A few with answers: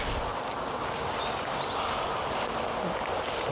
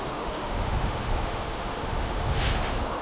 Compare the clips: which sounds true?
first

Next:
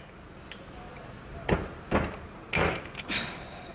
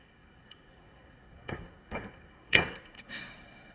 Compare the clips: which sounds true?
first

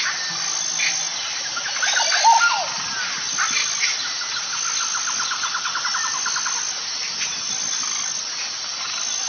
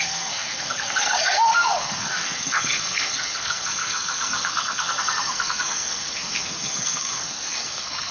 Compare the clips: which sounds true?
first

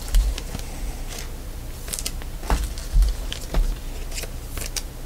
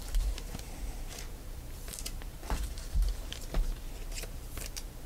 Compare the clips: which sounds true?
first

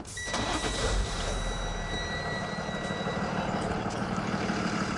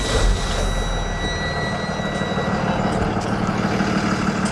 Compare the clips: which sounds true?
second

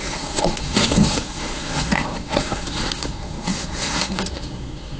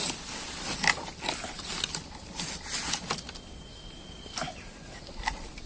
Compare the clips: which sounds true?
second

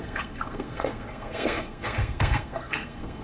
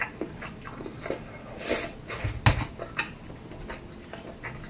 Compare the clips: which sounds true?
second